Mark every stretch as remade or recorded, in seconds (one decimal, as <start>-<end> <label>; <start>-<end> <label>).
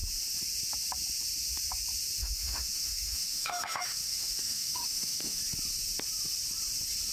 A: 0.0-2.2 recorded; 2.2-5.4 remade; 5.4-7.1 recorded